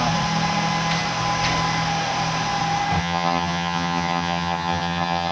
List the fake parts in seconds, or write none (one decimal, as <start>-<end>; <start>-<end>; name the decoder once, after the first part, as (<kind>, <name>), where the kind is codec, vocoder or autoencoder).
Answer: 3.0-5.3 (vocoder, HiFi-GAN)